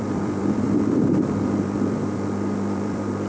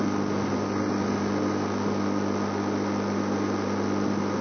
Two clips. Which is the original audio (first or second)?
second